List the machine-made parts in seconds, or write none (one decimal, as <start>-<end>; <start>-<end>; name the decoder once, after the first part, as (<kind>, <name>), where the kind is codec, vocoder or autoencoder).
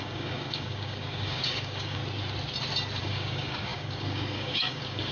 0.0-2.0 (codec, DAC); 3.0-5.1